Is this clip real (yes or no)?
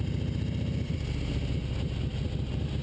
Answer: yes